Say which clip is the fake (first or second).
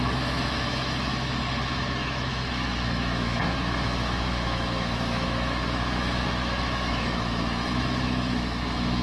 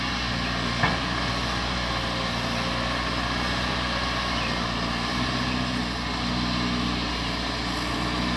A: first